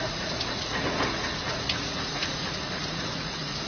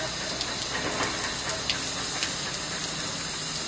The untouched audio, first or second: second